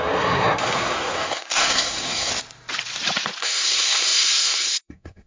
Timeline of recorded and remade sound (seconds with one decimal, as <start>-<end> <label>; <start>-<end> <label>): 0.0-2.3 remade; 2.3-3.4 recorded; 3.4-5.3 remade